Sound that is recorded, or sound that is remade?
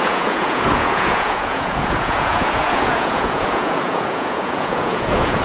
remade